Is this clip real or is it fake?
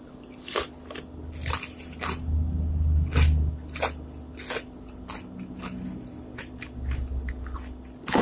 real